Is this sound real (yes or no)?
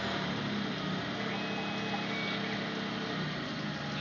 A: yes